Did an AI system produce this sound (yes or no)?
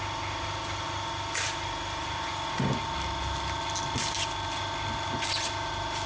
no